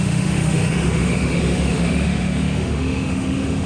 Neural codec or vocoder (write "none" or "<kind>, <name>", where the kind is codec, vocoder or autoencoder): autoencoder, DAC-VAE